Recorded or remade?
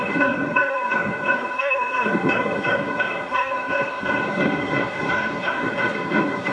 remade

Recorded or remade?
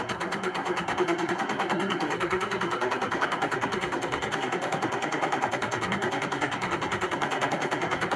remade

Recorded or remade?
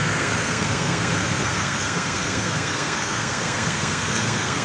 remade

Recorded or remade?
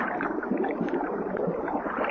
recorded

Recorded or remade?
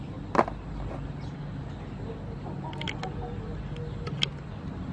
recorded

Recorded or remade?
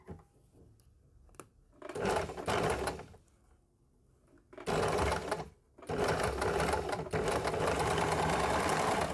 recorded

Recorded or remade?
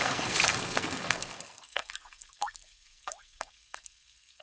remade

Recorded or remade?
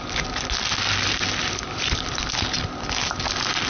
recorded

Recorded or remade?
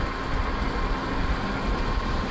recorded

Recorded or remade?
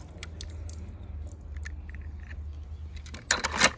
recorded